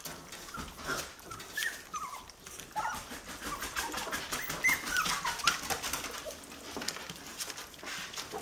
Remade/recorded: recorded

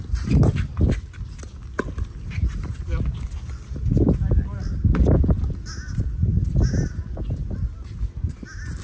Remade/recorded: recorded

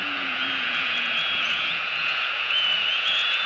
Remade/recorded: remade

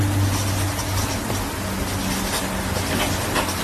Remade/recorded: recorded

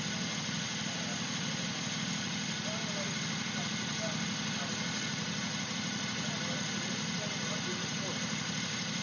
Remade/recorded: recorded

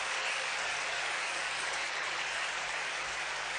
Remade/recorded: remade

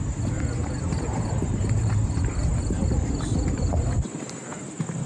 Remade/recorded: remade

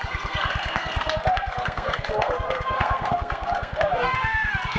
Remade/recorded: remade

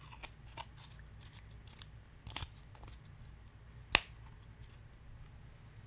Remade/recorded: recorded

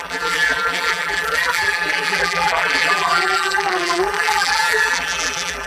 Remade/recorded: remade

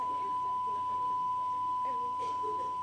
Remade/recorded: recorded